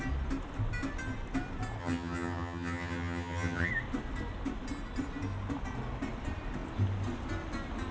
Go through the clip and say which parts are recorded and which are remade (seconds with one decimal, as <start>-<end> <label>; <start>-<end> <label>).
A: 0.0-1.8 recorded; 1.8-3.7 remade; 3.7-7.9 recorded